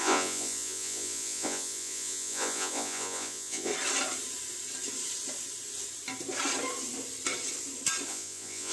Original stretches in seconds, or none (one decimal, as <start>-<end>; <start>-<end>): 3.7-8.1